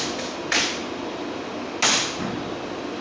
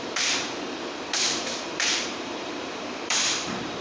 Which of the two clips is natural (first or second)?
first